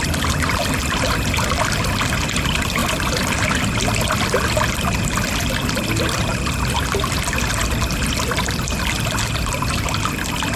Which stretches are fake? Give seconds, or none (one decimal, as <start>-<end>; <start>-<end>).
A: none